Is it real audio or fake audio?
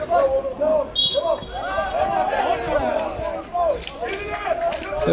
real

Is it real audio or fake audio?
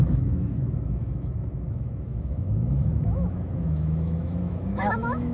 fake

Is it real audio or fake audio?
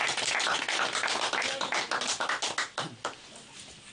real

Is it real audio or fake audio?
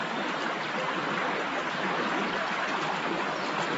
real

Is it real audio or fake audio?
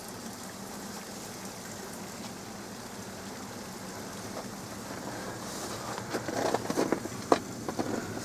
real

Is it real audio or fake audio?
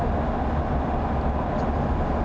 real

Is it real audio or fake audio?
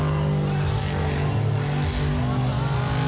real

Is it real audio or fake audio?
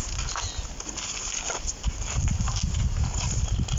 real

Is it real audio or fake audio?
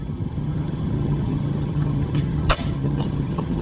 fake